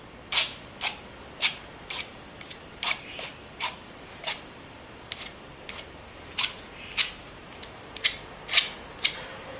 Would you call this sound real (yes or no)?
yes